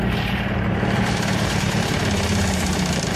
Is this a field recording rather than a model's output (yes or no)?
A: no